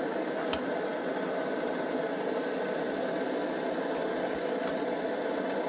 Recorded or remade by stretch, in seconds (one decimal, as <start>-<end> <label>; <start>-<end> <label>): 0.0-5.7 recorded